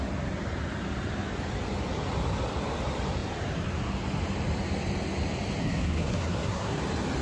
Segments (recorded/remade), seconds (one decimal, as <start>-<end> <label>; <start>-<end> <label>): 0.0-5.6 recorded; 5.6-6.8 remade; 6.8-7.2 recorded